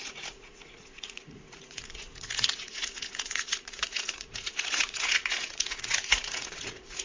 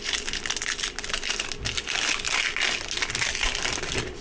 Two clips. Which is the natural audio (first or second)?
second